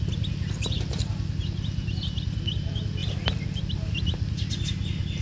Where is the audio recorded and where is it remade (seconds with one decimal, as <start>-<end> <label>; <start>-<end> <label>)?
0.0-5.2 recorded